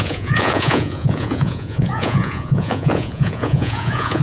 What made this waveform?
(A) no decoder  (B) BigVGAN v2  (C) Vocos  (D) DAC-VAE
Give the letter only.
C